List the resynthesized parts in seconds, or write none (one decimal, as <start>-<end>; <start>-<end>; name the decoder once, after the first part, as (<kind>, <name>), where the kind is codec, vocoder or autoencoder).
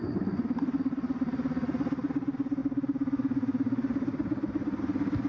none